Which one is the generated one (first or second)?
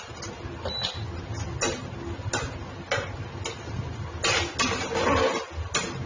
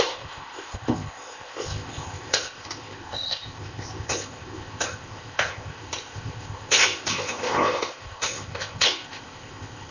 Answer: second